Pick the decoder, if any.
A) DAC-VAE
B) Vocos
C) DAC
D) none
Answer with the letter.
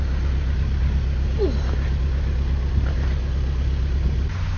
D